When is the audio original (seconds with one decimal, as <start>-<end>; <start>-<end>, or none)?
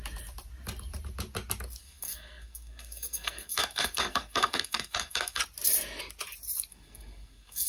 0.0-1.8; 5.4-6.7